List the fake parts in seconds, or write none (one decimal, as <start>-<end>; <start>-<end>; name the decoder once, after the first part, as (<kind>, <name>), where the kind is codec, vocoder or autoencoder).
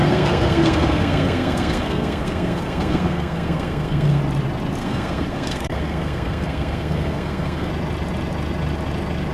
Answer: 0.0-4.2 (codec, SNAC); 4.8-7.7